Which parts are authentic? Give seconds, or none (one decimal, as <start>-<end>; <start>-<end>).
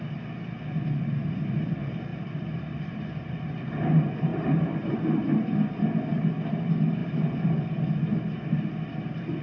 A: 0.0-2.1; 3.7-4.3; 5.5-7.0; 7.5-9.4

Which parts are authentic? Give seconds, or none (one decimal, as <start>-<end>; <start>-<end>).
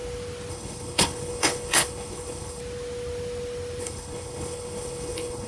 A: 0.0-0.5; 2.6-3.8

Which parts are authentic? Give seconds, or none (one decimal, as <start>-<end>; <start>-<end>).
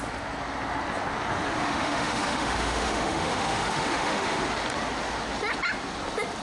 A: 0.0-1.6; 4.4-6.4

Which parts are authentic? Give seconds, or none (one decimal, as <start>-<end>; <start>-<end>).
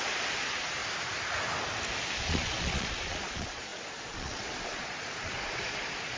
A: 0.8-2.2